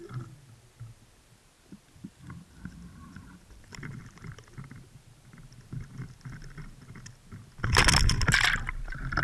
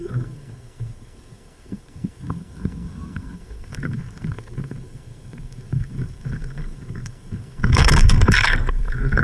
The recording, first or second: first